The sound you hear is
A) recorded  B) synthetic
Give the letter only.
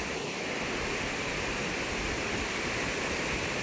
A